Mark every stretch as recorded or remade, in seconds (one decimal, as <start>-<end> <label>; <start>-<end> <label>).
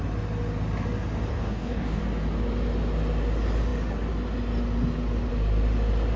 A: 0.0-1.3 recorded; 1.3-2.0 remade; 2.0-6.2 recorded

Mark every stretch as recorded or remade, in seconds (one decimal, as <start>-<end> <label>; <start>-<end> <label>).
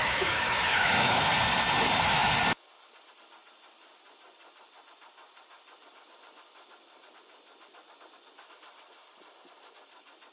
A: 0.0-1.3 remade; 1.3-10.3 recorded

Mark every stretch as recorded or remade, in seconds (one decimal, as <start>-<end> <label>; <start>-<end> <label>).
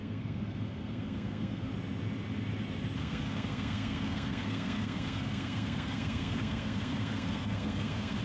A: 0.0-1.7 remade; 1.7-3.0 recorded; 3.0-8.2 remade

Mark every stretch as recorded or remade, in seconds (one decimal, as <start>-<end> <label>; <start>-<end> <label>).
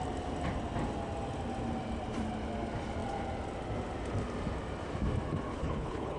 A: 0.0-5.5 recorded; 5.5-6.2 remade